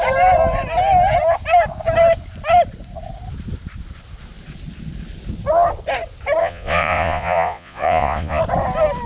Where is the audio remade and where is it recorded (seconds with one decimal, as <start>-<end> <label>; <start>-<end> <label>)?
0.0-6.4 recorded; 6.4-8.4 remade; 8.4-9.1 recorded